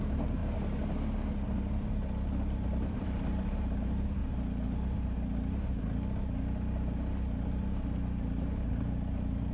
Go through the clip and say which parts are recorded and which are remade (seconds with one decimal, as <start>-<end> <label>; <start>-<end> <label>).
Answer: 0.0-0.4 remade; 0.4-1.7 recorded; 1.7-4.2 remade; 4.2-8.8 recorded; 8.8-9.5 remade